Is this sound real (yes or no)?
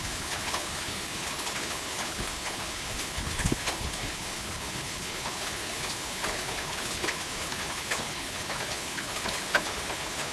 no